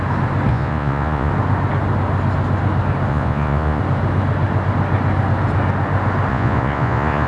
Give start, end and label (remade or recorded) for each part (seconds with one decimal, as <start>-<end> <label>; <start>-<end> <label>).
0.0-0.5 recorded; 0.5-1.3 remade; 1.3-3.1 recorded; 3.1-3.8 remade; 3.8-6.3 recorded; 6.3-7.3 remade

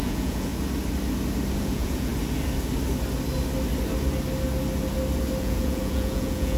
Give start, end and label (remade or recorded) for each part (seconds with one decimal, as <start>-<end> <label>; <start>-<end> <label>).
0.0-0.5 remade; 0.5-1.6 recorded; 1.6-2.1 remade; 2.1-5.4 recorded; 5.4-6.6 remade

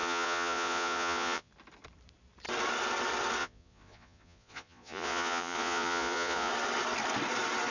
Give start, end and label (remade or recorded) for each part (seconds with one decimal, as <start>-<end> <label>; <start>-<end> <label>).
0.0-1.5 remade; 1.5-3.4 recorded; 3.4-6.5 remade; 6.5-7.7 recorded

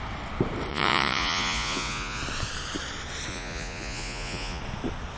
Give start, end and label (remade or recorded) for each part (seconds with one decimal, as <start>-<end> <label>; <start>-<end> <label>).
0.0-0.7 recorded; 0.7-2.2 remade; 2.2-3.3 recorded; 3.3-4.6 remade; 4.6-5.2 recorded